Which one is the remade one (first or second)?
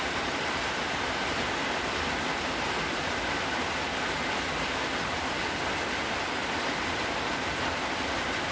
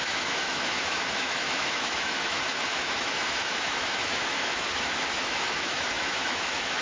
second